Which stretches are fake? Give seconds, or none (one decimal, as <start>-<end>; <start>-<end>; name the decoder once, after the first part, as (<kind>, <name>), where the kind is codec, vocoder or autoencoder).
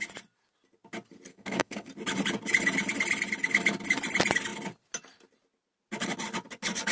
1.3-1.9 (codec, SNAC)